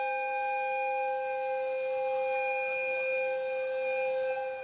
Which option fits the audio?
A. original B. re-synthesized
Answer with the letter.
A